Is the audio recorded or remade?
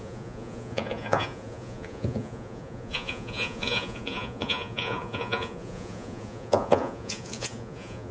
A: remade